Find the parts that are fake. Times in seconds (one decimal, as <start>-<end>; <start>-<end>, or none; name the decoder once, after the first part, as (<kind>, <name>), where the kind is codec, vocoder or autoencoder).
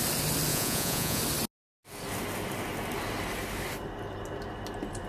0.5-1.2 (vocoder, Vocos)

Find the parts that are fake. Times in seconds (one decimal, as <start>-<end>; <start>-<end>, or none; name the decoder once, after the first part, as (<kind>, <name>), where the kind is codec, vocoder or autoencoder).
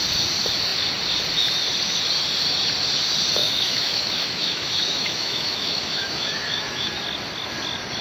3.4-6.9 (autoencoder, DAC-VAE)